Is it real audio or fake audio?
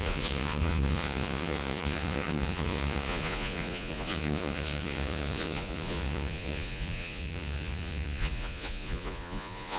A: fake